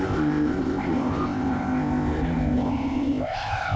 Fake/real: fake